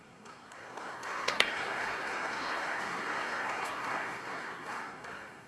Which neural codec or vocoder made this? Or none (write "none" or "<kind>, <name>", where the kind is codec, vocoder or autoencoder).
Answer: codec, SNAC